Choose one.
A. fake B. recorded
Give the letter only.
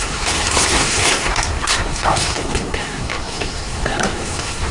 A